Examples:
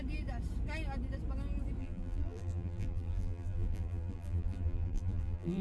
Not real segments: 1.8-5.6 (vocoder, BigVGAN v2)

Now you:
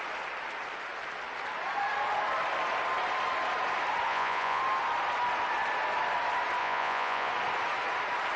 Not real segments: 4.1-4.6 (vocoder, Vocos); 6.6-7.3

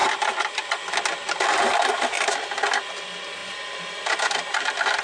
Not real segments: 0.0-0.7 (vocoder, BigVGAN v2); 3.4-3.9

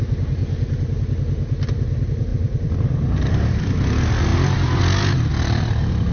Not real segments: 2.3-3.5 (vocoder, BigVGAN v2); 4.3-4.8; 5.3-6.1

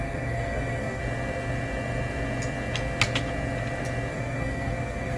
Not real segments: 0.0-1.0 (codec, SNAC); 4.1-5.2